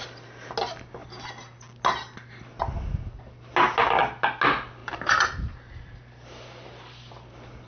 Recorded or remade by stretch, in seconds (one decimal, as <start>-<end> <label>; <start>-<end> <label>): 0.0-4.8 recorded; 4.8-7.1 remade; 7.1-7.7 recorded